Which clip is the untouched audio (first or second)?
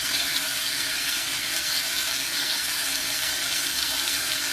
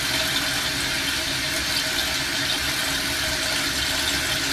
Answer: second